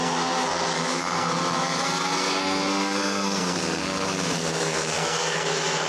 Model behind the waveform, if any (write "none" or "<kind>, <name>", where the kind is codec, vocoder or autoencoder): codec, SNAC